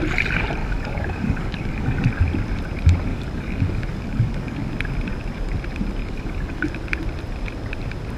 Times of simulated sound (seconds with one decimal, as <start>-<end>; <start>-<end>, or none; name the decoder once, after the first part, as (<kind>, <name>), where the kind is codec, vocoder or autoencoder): 0.6-2.1 (codec, DAC); 3.1-4.7; 6.0-6.7